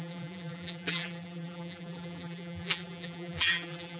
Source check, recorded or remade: remade